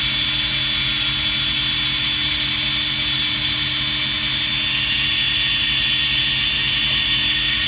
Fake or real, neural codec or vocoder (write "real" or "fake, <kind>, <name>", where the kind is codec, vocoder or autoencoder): real